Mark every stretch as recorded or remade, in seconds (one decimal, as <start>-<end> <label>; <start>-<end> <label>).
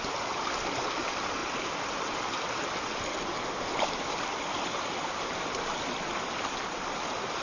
0.0-7.4 recorded